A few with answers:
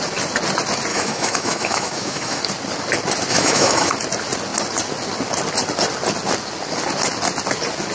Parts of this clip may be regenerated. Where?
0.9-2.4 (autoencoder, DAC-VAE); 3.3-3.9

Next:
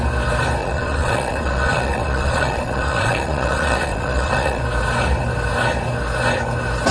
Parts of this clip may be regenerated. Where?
0.6-4.6 (vocoder, Vocos)

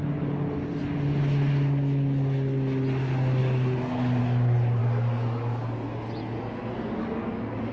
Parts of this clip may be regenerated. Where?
4.8-5.6 (codec, DAC)

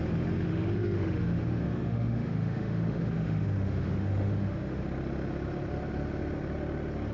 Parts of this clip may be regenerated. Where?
0.5-4.8 (autoencoder, DAC-VAE)

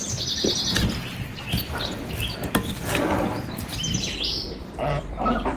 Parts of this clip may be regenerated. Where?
0.0-2.3 (vocoder, BigVGAN v2); 4.6-5.6

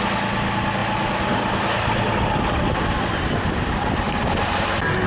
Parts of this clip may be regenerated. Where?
none

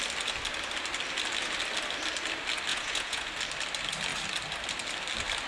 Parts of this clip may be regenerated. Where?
2.7-3.3 (vocoder, Vocos)

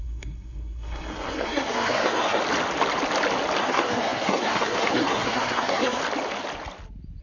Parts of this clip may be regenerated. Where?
0.0-2.4 (codec, SNAC); 3.6-6.0